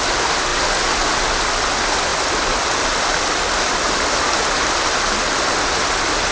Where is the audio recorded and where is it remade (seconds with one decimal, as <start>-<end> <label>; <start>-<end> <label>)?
0.0-2.1 recorded; 2.1-6.3 remade